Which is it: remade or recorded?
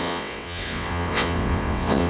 remade